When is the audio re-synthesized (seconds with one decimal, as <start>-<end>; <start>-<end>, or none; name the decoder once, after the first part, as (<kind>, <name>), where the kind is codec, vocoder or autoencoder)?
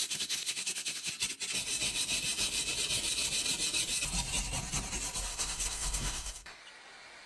0.0-1.1 (codec, SNAC); 5.3-6.6